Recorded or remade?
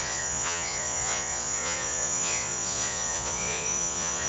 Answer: remade